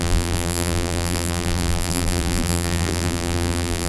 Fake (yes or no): yes